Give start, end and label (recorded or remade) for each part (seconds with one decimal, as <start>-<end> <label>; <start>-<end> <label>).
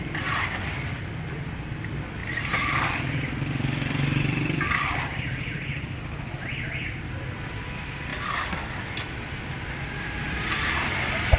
0.0-2.2 recorded; 2.2-6.4 remade; 6.4-8.1 recorded; 8.1-10.2 remade; 10.2-11.4 recorded